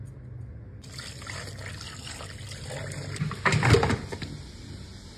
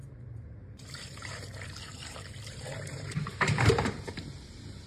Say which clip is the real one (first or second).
first